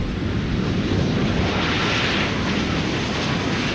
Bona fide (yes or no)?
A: yes